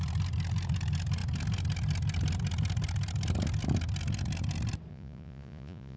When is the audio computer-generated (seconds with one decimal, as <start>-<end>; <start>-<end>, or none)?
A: 4.9-6.0